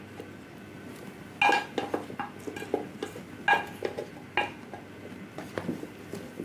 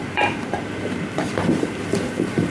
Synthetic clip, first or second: second